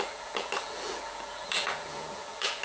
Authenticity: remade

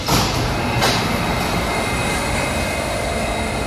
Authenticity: recorded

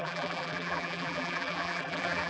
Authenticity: remade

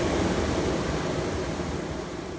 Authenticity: recorded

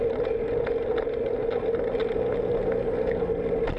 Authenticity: recorded